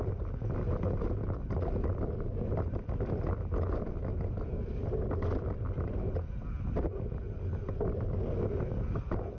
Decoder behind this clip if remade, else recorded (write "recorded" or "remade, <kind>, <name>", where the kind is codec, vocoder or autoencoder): recorded